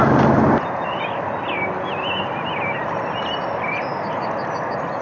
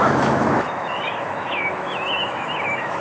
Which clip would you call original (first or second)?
first